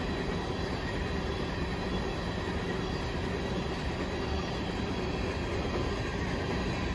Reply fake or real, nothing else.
real